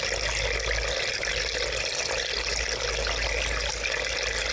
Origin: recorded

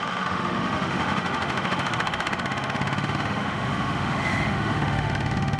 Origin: remade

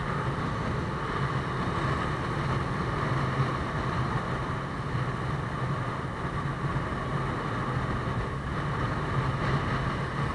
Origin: recorded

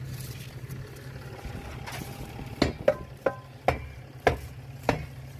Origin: recorded